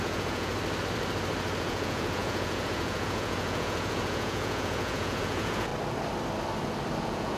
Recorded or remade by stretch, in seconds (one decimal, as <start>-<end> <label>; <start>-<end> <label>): 0.0-0.5 remade; 0.5-1.6 recorded; 1.6-5.7 remade; 5.7-7.0 recorded; 7.0-7.4 remade